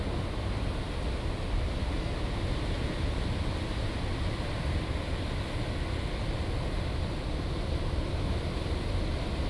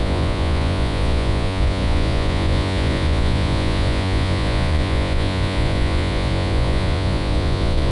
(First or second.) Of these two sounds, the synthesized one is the second